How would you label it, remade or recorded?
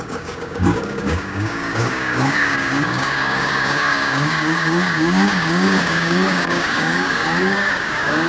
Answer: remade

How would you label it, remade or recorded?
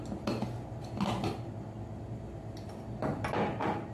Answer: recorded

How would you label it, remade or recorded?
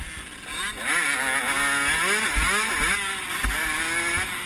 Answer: recorded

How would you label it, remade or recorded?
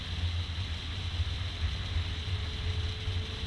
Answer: recorded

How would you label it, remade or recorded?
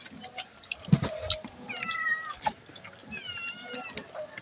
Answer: recorded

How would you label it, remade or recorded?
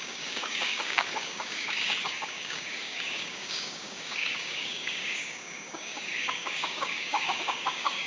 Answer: remade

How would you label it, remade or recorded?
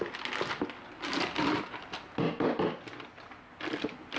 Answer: recorded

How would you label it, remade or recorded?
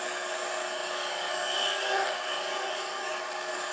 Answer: remade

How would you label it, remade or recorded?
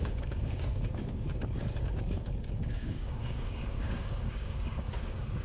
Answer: remade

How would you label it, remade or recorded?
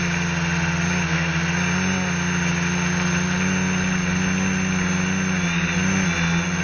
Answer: recorded